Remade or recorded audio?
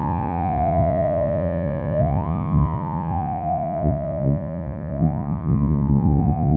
remade